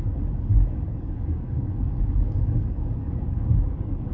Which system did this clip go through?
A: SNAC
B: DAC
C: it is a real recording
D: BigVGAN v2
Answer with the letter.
B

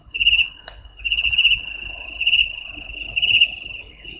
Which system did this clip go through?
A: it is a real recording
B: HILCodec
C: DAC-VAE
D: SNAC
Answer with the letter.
B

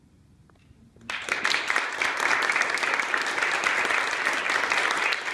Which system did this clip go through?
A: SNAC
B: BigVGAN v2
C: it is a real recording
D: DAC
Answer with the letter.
C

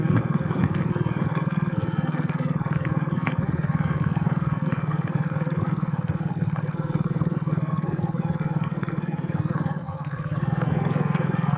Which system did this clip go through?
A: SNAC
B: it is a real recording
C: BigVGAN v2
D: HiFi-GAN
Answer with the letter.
A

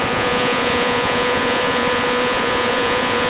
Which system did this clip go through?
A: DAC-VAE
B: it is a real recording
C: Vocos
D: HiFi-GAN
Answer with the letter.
C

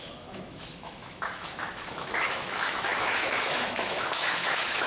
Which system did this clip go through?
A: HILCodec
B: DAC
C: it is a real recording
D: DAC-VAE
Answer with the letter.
D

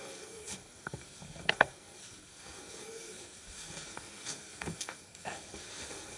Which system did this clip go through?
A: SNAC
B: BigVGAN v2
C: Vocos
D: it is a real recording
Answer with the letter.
A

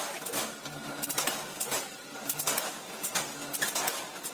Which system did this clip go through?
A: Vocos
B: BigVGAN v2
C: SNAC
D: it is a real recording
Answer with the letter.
D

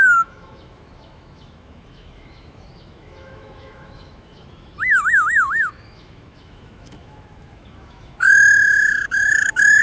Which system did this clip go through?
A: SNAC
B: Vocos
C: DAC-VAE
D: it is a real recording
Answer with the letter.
C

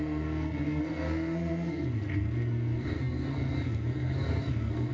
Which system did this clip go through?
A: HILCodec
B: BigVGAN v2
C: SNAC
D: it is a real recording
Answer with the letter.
C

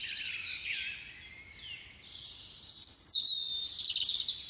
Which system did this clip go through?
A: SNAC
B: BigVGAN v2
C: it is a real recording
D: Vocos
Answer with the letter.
C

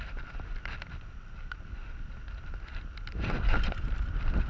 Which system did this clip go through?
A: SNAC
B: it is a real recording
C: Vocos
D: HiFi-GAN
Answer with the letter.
B